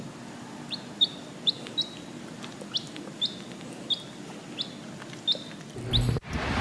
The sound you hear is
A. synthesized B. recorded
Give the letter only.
B